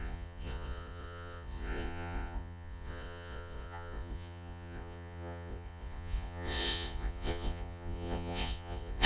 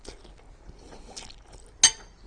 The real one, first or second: second